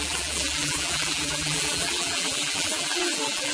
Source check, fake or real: fake